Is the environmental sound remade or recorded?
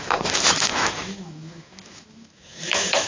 remade